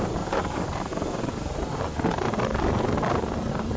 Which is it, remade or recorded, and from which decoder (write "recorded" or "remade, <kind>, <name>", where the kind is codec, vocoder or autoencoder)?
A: remade, vocoder, BigVGAN v2